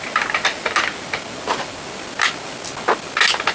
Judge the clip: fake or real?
real